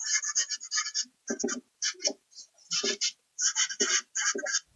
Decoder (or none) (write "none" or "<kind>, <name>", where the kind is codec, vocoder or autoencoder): none